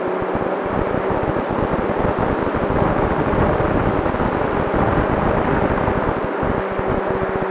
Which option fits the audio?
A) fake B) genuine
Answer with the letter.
B